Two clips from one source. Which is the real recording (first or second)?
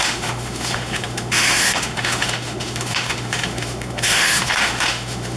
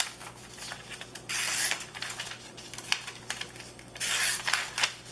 second